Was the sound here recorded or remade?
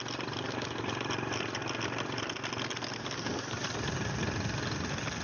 recorded